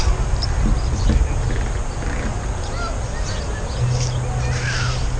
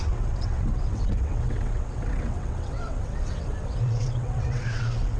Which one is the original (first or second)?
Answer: first